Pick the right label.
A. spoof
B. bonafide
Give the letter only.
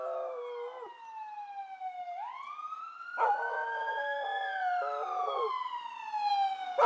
B